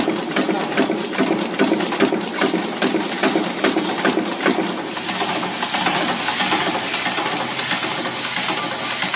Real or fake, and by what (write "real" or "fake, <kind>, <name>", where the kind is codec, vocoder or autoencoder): real